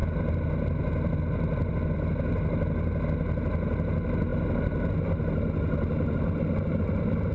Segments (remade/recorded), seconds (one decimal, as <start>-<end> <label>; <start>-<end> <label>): 0.0-7.3 recorded